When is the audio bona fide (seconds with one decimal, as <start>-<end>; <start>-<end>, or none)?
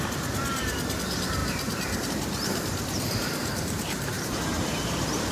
0.0-1.4; 2.1-3.4